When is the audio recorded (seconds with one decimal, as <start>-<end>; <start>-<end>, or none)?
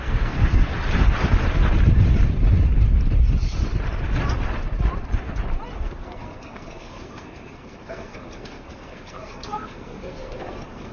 0.7-5.8